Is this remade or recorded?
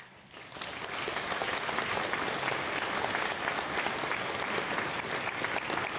recorded